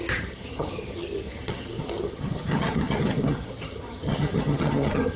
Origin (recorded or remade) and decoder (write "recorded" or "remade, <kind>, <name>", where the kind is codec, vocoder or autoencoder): remade, vocoder, HiFi-GAN